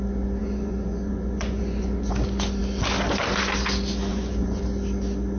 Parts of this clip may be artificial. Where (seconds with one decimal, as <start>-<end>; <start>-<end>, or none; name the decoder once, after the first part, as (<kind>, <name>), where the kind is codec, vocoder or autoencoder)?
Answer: 0.4-2.1 (vocoder, Vocos); 4.1-4.6

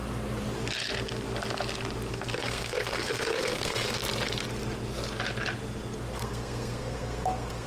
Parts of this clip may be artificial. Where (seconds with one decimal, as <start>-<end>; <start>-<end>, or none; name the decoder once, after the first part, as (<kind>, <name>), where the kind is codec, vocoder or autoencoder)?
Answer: 2.1-4.0 (codec, SNAC); 6.2-7.7

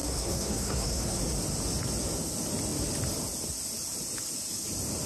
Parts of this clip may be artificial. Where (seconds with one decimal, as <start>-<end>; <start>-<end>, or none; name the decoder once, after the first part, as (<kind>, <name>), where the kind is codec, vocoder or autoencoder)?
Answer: 0.0-1.2 (codec, SNAC)

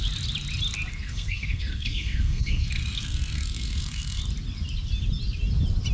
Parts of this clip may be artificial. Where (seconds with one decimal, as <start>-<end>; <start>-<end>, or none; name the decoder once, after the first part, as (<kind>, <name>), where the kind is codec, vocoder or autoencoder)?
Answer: 0.9-4.2 (codec, SNAC)